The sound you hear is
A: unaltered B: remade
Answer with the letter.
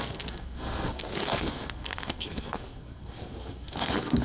B